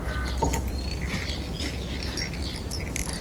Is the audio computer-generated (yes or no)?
no